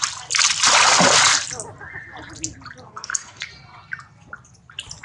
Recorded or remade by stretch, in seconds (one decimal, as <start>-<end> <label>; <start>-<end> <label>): 0.0-2.9 recorded; 2.9-3.5 remade; 3.5-5.0 recorded